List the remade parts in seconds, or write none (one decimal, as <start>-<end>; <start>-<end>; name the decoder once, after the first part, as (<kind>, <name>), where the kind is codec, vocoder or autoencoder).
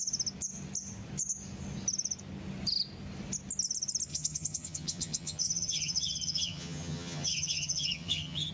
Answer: 4.1-8.5 (vocoder, HiFi-GAN)